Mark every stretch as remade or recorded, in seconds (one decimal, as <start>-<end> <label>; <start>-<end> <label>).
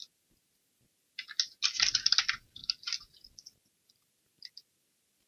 0.0-5.3 recorded